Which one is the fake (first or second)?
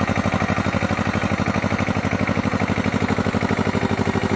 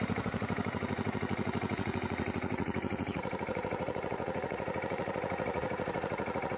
second